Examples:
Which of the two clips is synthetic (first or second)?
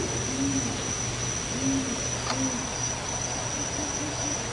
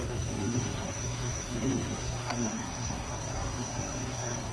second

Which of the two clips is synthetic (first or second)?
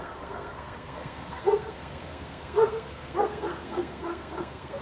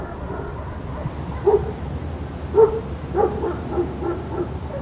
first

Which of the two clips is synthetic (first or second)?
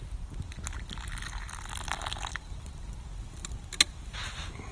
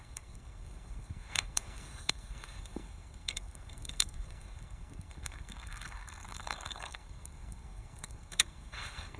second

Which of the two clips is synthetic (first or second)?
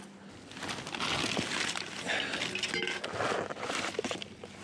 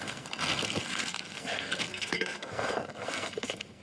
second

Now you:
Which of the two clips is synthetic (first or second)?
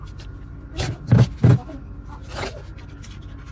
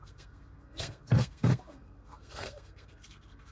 second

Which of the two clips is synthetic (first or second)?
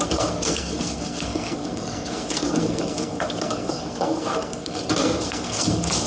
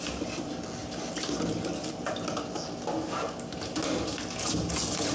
first